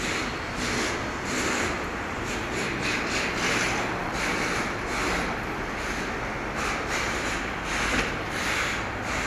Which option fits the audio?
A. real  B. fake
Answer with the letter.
A